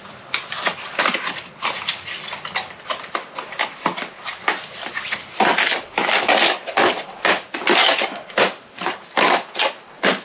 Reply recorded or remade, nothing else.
recorded